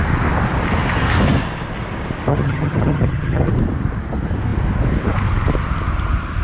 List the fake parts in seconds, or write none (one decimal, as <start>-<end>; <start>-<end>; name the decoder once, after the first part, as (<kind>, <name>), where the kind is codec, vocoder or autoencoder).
2.3-3.5 (vocoder, HiFi-GAN)